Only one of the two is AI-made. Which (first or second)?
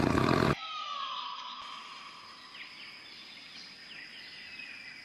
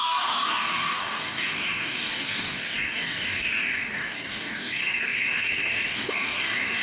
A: second